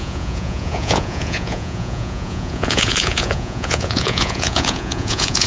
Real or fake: fake